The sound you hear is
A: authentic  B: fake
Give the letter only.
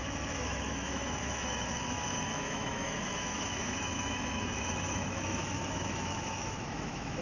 B